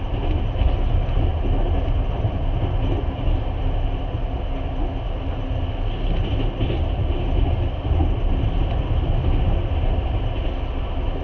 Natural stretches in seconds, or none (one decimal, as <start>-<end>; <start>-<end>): 0.0-11.2